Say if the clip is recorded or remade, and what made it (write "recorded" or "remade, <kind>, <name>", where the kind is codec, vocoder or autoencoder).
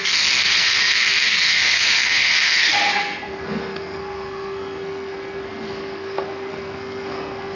remade, codec, SNAC